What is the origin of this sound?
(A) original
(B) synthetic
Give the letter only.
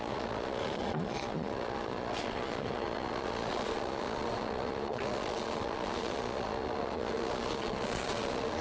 B